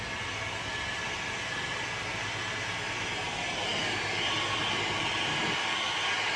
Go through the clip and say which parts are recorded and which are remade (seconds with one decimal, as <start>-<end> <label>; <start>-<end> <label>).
0.0-6.4 recorded